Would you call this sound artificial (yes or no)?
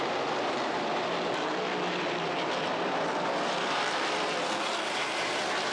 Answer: yes